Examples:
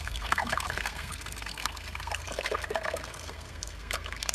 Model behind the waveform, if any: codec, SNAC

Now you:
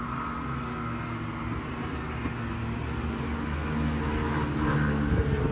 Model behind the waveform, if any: none